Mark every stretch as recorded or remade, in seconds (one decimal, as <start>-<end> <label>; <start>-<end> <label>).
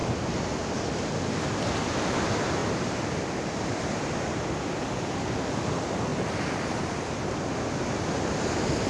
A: 0.0-0.5 remade; 0.5-2.6 recorded; 2.6-3.2 remade; 3.2-8.9 recorded